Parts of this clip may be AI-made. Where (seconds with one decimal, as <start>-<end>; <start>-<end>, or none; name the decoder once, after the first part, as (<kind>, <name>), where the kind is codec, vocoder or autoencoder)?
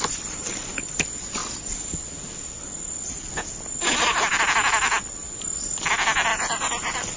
6.3-7.2 (vocoder, BigVGAN v2)